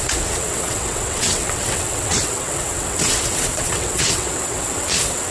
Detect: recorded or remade remade